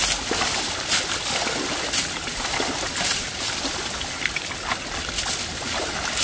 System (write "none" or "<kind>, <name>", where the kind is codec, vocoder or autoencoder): none